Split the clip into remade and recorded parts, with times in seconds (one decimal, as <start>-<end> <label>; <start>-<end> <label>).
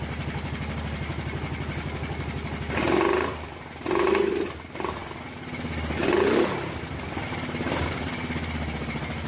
0.0-9.3 recorded